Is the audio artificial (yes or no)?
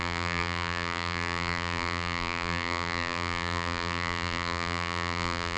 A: yes